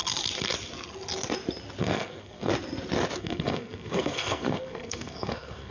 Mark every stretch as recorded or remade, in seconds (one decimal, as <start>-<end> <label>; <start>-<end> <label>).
0.0-1.8 recorded; 1.8-2.5 remade; 2.5-3.2 recorded; 3.2-5.7 remade